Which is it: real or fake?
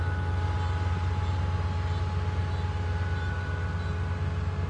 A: real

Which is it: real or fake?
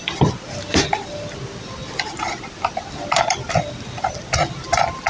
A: real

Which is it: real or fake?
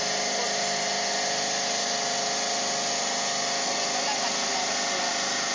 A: real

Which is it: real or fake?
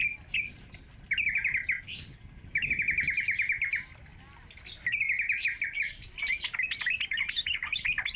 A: real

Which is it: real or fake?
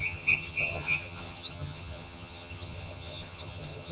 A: fake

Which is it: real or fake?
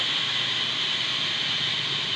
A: real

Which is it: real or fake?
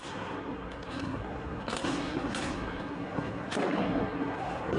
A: fake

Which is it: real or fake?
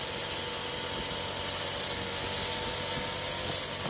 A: real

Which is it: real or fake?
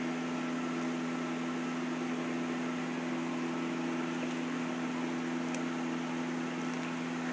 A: real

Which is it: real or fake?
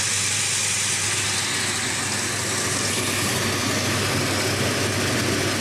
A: real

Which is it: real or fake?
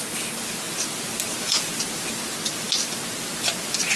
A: real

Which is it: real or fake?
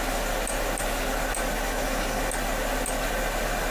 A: real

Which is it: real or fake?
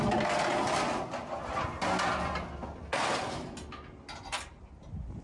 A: real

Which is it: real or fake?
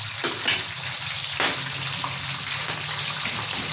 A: real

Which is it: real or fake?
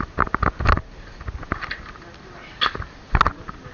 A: real